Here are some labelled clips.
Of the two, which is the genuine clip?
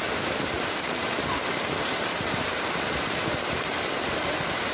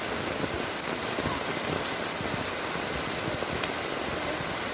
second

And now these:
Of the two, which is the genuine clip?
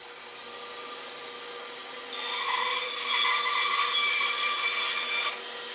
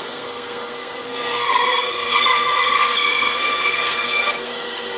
first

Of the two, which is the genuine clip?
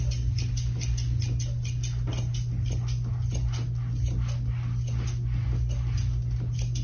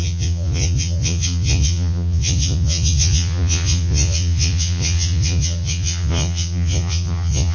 first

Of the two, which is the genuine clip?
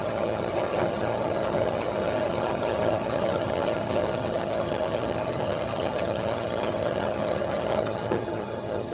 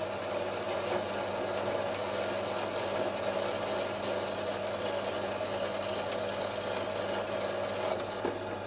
second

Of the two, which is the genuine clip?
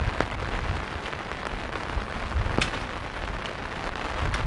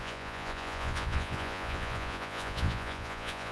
first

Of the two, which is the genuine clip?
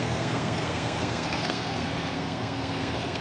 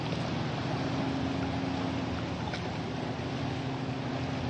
second